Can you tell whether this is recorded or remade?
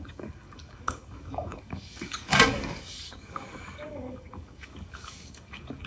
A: remade